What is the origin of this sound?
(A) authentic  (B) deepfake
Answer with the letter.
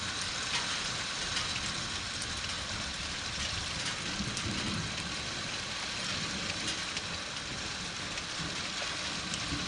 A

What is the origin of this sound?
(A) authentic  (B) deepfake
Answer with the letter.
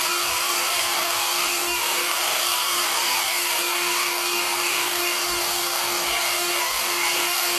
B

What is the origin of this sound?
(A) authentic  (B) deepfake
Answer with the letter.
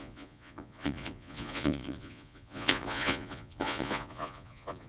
B